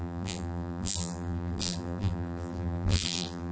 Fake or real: fake